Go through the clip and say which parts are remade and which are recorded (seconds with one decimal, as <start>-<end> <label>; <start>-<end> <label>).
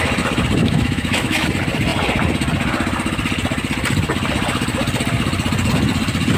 0.0-0.6 recorded; 0.6-1.5 remade; 1.5-6.4 recorded